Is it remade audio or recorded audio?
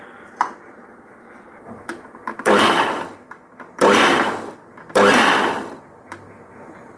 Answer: remade